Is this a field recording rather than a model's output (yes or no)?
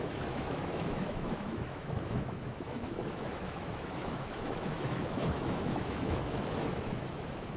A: no